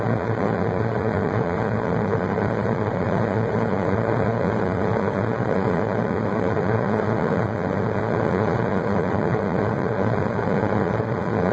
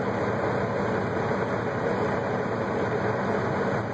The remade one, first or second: first